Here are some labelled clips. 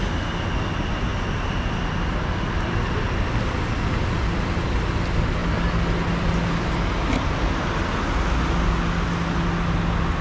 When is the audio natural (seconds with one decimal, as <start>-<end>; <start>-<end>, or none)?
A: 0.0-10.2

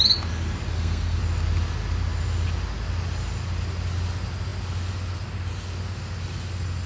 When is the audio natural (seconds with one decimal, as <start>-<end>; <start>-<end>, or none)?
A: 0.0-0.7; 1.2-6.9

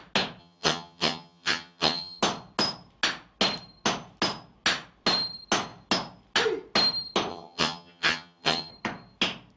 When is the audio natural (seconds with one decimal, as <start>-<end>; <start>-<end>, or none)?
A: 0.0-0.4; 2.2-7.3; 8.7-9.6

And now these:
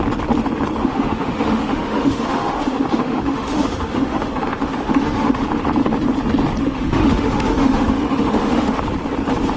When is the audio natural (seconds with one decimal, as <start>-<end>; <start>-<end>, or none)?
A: 0.0-0.8; 5.4-6.6; 8.8-9.6

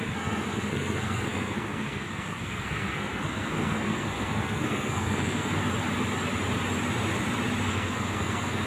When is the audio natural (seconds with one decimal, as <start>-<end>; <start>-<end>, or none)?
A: 5.6-7.7